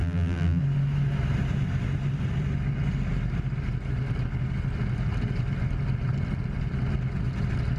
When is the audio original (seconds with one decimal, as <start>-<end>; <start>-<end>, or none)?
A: 0.6-7.8